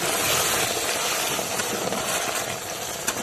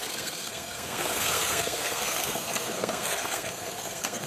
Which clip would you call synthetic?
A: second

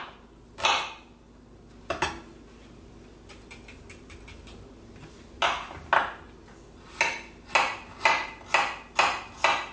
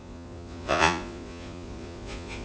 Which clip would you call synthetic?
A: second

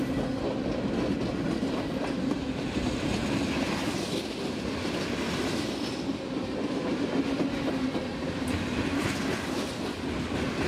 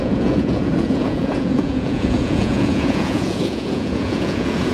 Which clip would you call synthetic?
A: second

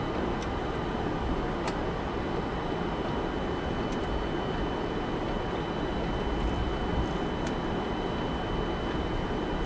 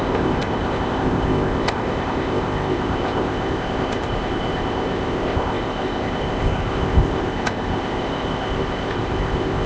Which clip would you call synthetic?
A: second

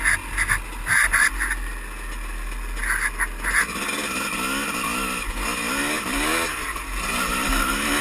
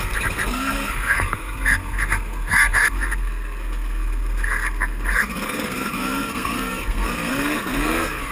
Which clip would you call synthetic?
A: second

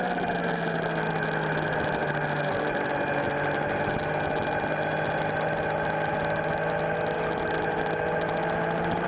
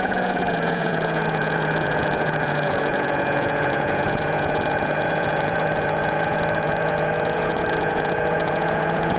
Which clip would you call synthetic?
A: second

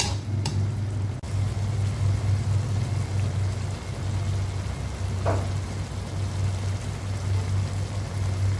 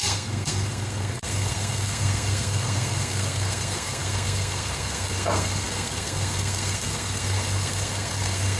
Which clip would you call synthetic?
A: second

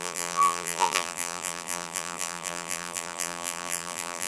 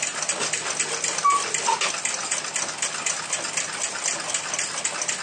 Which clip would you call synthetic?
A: first